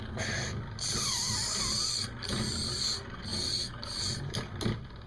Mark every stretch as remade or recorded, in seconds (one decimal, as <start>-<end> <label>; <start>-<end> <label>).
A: 0.0-5.1 recorded